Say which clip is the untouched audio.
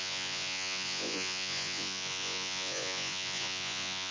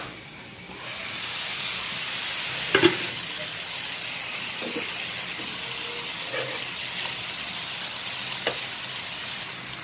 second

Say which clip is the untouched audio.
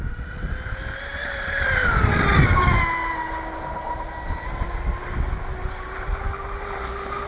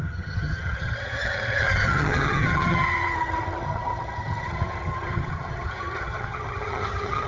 first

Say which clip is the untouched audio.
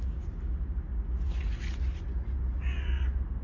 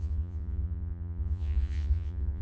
first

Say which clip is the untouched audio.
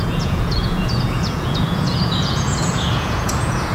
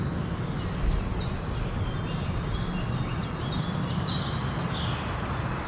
second